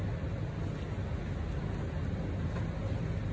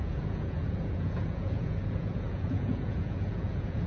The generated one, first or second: second